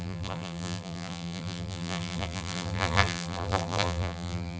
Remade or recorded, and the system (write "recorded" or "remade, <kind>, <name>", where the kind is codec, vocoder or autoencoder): remade, vocoder, BigVGAN v2